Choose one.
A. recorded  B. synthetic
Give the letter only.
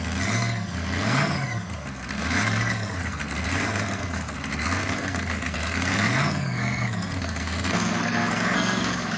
B